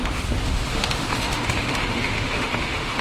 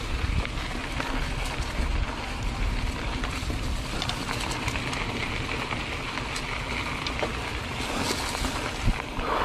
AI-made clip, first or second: first